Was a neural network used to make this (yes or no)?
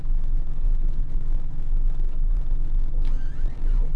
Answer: yes